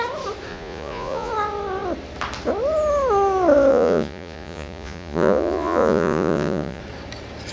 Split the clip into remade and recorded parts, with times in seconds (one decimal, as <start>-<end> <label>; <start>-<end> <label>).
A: 0.0-0.5 recorded; 0.5-1.3 remade; 1.3-3.7 recorded; 3.7-6.8 remade; 6.8-7.5 recorded